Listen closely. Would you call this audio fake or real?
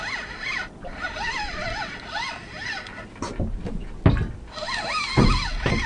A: real